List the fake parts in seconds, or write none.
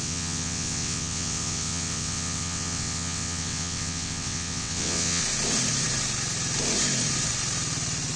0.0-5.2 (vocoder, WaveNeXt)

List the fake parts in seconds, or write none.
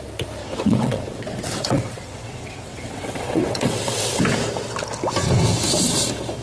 0.4-4.2 (vocoder, WaveNeXt)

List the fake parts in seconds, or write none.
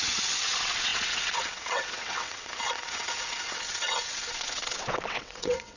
0.0-5.8 (vocoder, WaveNeXt)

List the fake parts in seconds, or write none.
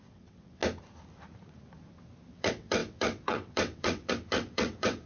0.0-0.6 (vocoder, WaveNeXt); 2.3-5.1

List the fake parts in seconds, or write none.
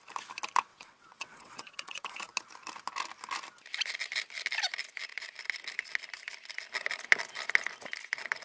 0.7-2.2 (vocoder, WaveNeXt)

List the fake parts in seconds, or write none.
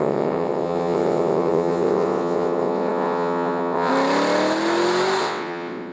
0.0-3.9 (vocoder, WaveNeXt); 5.2-5.9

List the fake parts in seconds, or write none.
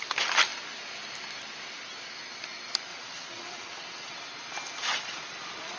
2.9-4.2 (vocoder, WaveNeXt)